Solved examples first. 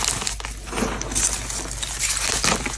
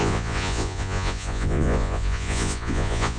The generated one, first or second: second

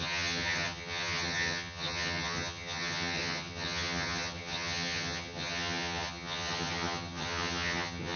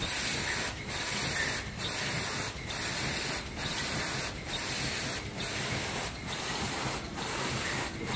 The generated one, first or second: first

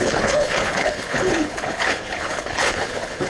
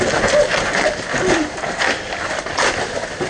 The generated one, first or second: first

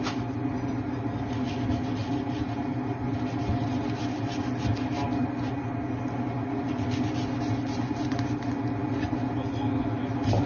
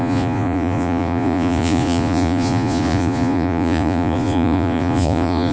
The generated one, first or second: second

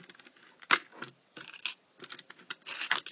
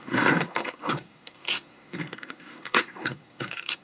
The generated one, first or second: second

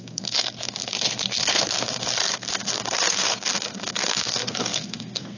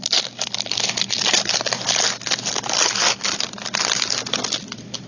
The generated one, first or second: first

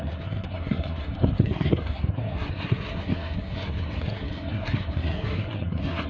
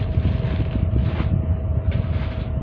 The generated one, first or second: first